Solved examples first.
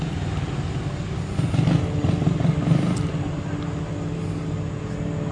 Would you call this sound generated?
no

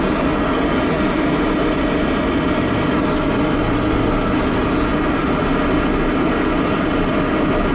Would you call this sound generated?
no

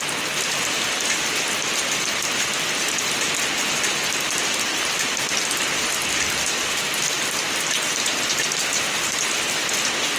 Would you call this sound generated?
no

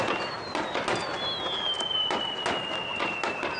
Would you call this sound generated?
no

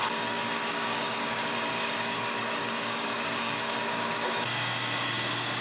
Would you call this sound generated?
yes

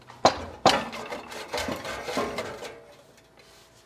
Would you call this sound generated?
no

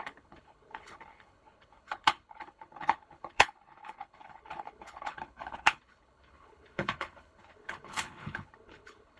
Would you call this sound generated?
yes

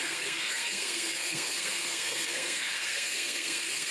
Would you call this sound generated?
yes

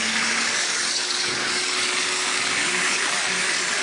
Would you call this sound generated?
yes